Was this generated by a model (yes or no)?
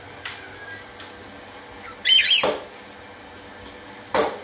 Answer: no